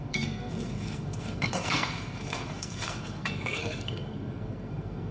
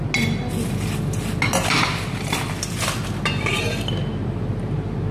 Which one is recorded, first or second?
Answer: second